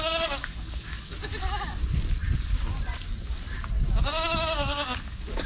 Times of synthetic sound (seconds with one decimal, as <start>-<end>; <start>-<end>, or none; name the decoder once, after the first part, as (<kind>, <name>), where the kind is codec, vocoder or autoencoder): 0.0-1.3 (codec, DAC); 4.0-5.5